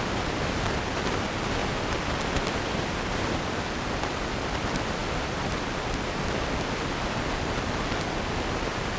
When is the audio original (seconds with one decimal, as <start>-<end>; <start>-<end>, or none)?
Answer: 0.0-1.6; 3.4-5.0; 6.2-9.0